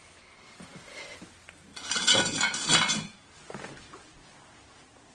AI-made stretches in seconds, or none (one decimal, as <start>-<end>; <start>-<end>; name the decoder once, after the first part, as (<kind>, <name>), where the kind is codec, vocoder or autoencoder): none